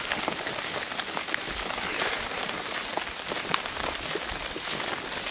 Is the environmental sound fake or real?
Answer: real